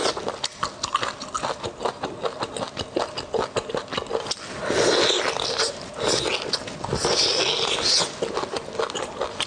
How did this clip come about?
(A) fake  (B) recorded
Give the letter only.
B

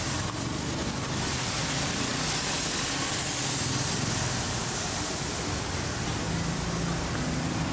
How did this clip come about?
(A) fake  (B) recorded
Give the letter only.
B